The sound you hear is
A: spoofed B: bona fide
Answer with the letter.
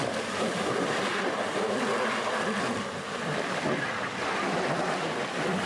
B